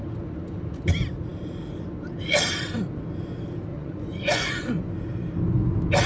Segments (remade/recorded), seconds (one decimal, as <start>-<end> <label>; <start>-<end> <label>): 0.0-3.7 recorded; 3.7-4.9 remade; 4.9-6.1 recorded